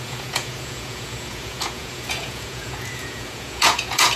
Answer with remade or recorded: remade